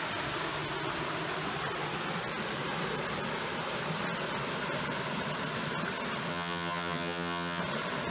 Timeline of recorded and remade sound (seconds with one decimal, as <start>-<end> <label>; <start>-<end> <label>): 0.0-6.3 recorded; 6.3-7.6 remade; 7.6-8.1 recorded